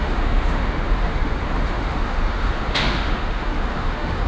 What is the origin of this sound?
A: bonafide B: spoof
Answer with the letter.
B